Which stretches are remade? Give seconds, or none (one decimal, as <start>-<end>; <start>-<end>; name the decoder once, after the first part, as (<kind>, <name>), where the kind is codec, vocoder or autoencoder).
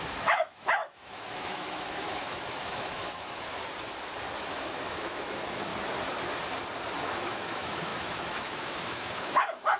0.0-3.5 (autoencoder, DAC-VAE); 4.4-5.7; 7.0-9.8